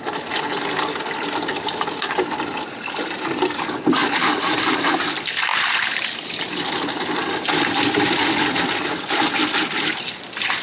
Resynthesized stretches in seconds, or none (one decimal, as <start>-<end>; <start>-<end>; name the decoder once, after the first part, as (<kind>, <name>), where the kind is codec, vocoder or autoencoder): none